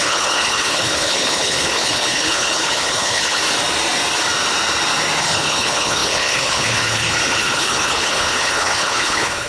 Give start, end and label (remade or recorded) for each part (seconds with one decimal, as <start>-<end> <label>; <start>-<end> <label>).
0.0-3.4 remade; 3.4-5.2 recorded; 5.2-9.5 remade

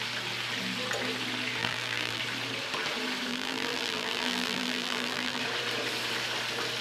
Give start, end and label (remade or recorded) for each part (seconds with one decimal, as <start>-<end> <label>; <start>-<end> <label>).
0.0-1.6 recorded; 1.6-2.2 remade; 2.2-3.3 recorded; 3.3-5.4 remade; 5.4-6.8 recorded

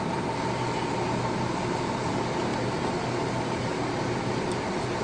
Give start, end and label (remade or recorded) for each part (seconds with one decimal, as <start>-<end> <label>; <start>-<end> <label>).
0.0-5.0 recorded

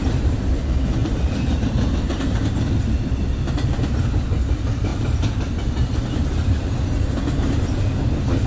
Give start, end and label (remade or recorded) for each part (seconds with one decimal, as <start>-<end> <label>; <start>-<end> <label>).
0.0-0.5 remade; 0.5-1.0 recorded; 1.0-2.7 remade; 2.7-4.9 recorded; 4.9-6.6 remade; 6.6-8.5 recorded

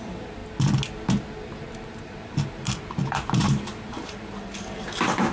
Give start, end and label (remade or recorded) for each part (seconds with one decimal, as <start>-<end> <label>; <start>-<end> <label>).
0.0-0.4 remade; 0.4-1.6 recorded; 1.6-5.3 remade

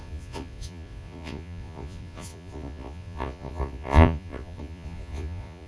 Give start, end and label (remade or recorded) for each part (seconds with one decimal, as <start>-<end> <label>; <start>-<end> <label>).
0.0-5.7 remade

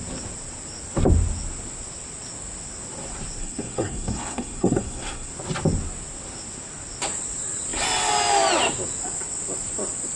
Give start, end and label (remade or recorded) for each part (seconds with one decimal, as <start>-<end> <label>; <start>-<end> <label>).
0.0-3.4 recorded; 3.4-5.3 remade; 5.3-10.2 recorded